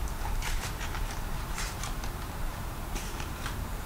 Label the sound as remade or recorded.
remade